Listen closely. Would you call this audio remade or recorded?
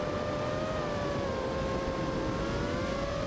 recorded